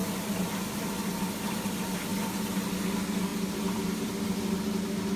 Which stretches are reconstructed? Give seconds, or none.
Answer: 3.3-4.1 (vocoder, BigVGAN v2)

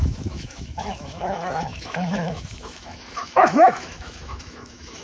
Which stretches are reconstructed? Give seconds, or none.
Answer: 0.0-5.0 (autoencoder, DAC-VAE)